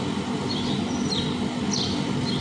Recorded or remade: recorded